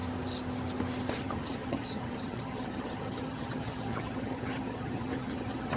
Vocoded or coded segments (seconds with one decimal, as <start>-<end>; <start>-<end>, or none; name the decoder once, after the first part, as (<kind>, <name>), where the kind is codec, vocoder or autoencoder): 1.1-5.8 (vocoder, HiFi-GAN)